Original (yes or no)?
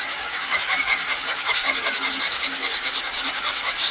no